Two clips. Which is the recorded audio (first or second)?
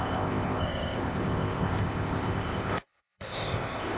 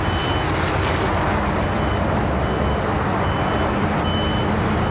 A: second